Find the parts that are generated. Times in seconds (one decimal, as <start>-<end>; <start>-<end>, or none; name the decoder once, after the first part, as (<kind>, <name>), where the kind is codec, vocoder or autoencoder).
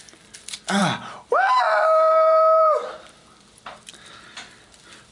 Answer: 0.0-5.1 (vocoder, BigVGAN v2)